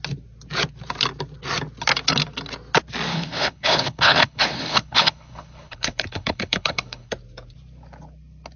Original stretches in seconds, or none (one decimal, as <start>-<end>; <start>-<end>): 0.0-3.1; 7.1-8.6